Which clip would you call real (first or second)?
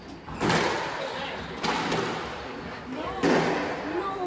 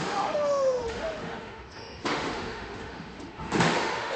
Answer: first